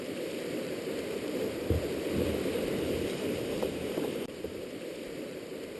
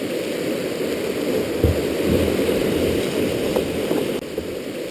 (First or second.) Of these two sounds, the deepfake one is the first